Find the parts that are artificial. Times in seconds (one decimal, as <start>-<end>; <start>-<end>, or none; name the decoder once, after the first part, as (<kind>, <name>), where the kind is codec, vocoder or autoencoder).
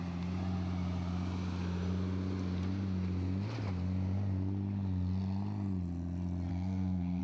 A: 6.5-7.2 (codec, SNAC)